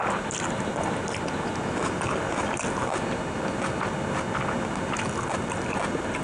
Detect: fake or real real